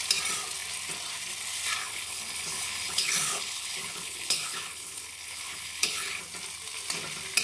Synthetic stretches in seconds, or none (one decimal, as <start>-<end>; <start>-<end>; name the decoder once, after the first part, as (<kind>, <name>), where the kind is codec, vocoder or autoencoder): 1.8-6.2 (codec, HILCodec)